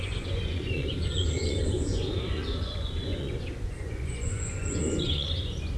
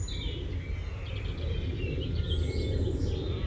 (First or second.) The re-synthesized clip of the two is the first